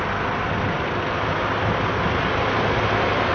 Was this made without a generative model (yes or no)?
yes